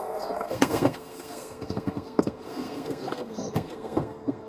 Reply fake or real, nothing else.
fake